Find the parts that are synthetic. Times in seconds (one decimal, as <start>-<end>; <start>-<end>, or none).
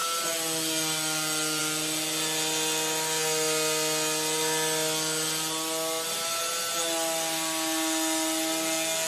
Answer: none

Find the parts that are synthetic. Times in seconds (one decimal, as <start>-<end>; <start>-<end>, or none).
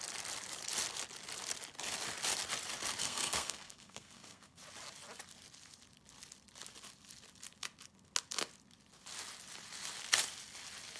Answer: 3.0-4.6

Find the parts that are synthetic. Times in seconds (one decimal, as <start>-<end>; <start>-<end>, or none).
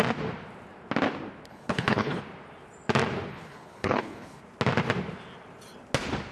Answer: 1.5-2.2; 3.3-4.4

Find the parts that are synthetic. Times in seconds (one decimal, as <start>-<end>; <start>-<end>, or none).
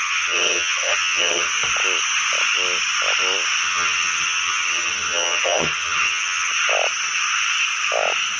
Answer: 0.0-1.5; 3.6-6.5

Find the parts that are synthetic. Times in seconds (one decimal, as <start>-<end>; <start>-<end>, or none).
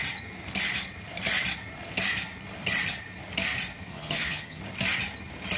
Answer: 3.9-4.6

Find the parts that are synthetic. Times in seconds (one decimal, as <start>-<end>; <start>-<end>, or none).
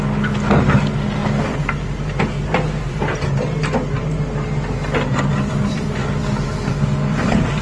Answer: 1.2-3.0; 5.3-7.6